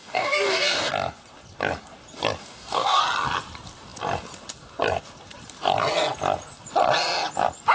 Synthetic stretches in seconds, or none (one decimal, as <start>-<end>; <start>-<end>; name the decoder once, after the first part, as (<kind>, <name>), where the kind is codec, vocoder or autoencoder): 0.0-0.9 (codec, DAC); 2.4-3.0